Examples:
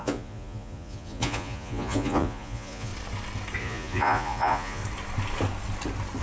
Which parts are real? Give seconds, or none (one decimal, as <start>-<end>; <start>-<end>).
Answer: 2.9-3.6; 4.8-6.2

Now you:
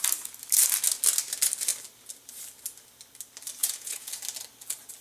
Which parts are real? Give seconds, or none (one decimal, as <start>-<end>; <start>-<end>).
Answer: 0.0-3.6; 4.1-5.0

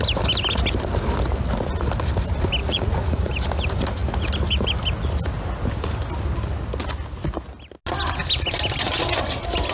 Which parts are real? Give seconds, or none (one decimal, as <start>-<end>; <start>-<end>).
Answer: 0.0-2.6; 3.3-9.7